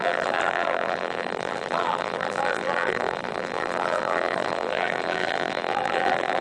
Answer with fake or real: fake